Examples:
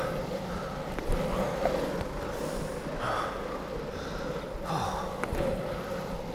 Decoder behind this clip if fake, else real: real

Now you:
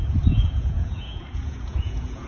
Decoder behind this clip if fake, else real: fake, vocoder, Vocos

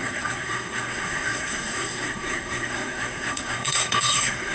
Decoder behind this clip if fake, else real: fake, codec, SNAC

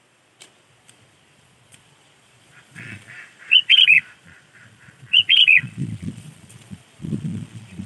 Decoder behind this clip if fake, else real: fake, vocoder, Vocos